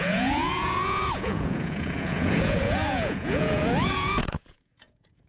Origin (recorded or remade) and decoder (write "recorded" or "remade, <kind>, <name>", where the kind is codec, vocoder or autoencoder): remade, vocoder, Vocos